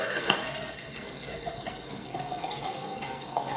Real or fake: fake